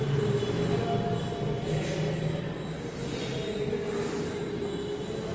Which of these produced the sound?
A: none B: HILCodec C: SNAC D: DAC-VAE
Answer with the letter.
A